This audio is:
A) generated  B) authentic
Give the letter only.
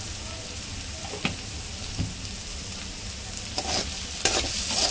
B